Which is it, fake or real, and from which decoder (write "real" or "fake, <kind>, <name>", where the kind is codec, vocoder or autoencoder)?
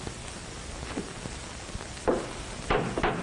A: real